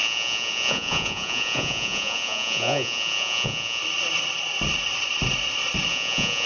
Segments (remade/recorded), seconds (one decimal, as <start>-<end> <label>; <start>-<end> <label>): 0.0-3.8 remade; 3.8-5.9 recorded; 5.9-6.5 remade